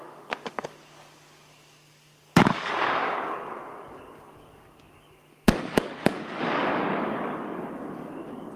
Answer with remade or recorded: remade